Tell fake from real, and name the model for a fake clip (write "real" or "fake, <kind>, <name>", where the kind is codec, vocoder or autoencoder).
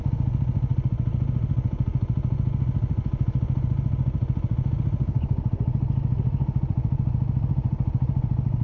real